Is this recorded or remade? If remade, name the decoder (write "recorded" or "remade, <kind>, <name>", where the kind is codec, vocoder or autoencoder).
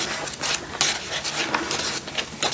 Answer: recorded